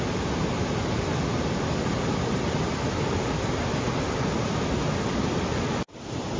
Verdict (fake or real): real